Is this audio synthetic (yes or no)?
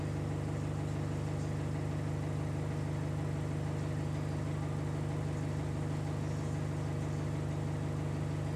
no